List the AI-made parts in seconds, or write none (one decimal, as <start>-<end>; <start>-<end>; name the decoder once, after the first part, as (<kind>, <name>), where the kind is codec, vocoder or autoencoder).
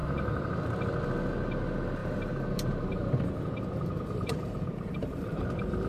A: 0.0-0.6 (vocoder, BigVGAN v2); 2.0-5.5